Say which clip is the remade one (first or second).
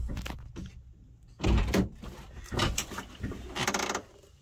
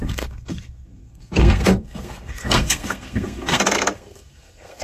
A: second